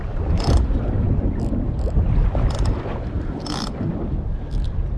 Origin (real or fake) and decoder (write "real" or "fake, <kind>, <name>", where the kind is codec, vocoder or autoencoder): real